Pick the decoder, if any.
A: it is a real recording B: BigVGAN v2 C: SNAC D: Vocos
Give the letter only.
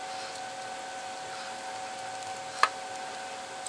A